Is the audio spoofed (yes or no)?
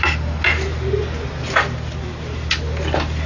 no